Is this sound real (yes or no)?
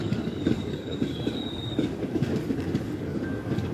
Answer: no